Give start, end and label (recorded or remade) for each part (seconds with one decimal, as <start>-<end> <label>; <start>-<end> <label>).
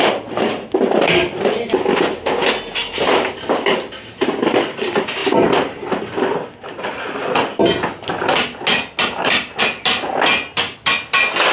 0.0-11.5 recorded